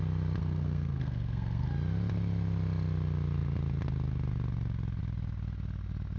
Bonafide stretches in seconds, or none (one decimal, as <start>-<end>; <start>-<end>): 0.0-0.4; 1.7-6.2

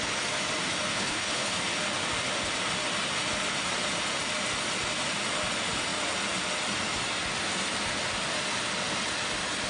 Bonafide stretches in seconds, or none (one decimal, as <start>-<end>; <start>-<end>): 0.0-0.9; 1.6-9.7

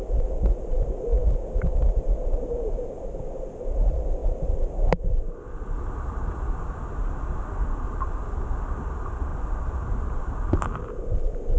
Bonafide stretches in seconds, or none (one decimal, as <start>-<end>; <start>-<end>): 0.0-11.6

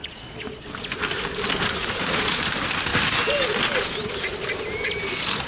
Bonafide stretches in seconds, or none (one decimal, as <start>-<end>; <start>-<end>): 0.7-1.8; 2.4-5.5

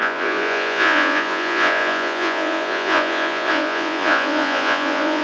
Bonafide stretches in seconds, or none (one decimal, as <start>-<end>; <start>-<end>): none

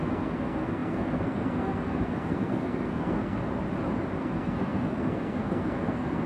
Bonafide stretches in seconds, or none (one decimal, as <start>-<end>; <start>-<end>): 3.4-4.2

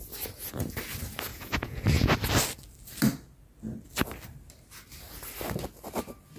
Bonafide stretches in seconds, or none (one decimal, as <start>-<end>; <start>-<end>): 0.0-1.3; 2.1-6.4

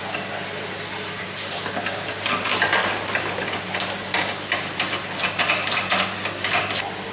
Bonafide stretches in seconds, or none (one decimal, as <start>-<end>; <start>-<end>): 0.0-7.1